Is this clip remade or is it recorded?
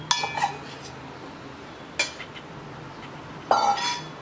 recorded